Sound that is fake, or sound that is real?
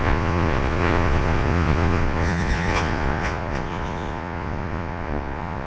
fake